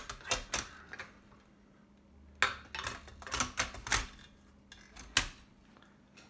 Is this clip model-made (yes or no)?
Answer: no